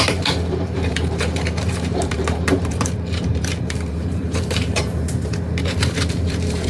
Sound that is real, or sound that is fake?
fake